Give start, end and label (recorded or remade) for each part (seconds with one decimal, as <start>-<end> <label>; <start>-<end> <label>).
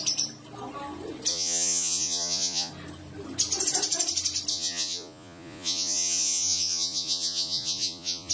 0.0-1.3 recorded; 1.3-2.7 remade; 2.7-4.5 recorded; 4.5-8.3 remade